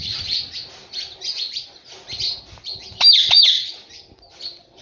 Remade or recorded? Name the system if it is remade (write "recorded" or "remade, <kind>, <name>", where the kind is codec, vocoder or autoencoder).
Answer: recorded